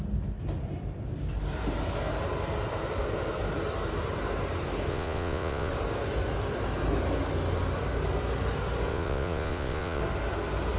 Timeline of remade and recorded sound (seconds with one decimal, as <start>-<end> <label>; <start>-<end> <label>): 0.0-4.9 recorded; 4.9-5.7 remade; 5.7-8.9 recorded; 8.9-10.0 remade; 10.0-10.8 recorded